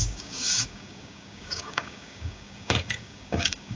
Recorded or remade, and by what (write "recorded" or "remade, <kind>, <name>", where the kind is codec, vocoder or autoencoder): remade, codec, DAC